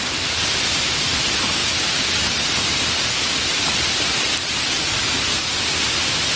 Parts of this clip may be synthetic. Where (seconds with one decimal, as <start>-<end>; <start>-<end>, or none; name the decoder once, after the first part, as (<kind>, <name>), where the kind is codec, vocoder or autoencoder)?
none

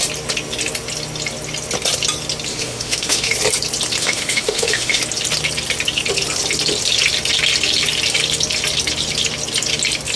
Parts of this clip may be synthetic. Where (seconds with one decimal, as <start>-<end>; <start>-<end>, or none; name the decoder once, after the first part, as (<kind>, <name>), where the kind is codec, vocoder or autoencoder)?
2.5-3.3 (autoencoder, DAC-VAE); 4.0-5.0

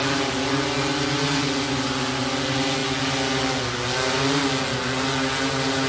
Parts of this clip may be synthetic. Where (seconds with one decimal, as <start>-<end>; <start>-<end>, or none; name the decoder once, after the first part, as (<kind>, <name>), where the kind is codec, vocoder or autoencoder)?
none

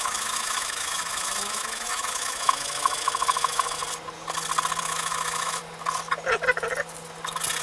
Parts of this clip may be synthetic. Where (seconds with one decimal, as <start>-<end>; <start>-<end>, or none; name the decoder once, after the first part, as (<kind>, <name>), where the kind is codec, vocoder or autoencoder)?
0.0-3.8 (autoencoder, DAC-VAE); 4.8-5.6

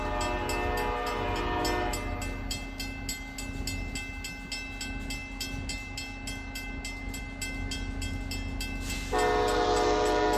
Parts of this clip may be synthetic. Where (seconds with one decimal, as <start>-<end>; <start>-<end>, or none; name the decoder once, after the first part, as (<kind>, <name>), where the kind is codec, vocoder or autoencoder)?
none

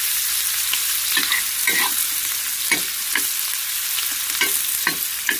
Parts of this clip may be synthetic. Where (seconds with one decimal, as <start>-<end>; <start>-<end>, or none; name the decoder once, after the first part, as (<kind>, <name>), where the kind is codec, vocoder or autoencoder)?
none

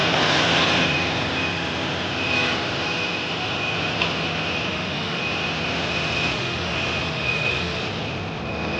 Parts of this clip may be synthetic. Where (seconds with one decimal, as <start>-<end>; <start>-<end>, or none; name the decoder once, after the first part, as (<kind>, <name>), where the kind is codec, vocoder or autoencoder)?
4.7-5.2 (autoencoder, DAC-VAE); 6.3-7.8